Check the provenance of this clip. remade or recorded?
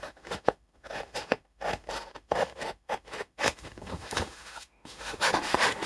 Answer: remade